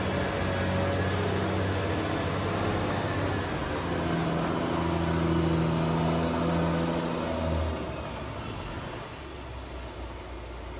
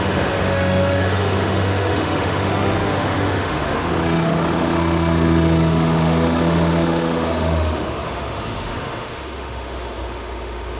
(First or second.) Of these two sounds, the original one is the first